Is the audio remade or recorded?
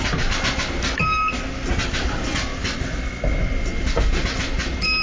recorded